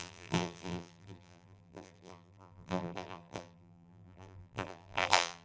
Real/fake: fake